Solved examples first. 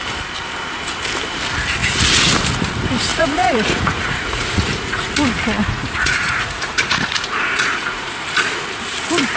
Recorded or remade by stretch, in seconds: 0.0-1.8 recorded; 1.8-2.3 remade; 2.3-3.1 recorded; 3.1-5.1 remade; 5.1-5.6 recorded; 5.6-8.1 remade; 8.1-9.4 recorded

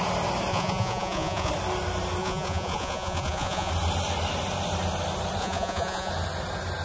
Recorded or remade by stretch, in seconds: 0.0-0.5 recorded; 0.5-1.5 remade; 1.5-2.2 recorded; 2.2-3.7 remade; 3.7-5.4 recorded; 5.4-6.1 remade; 6.1-6.8 recorded